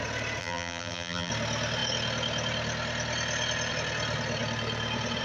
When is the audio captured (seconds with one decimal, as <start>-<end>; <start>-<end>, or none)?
0.0-0.4; 1.3-5.2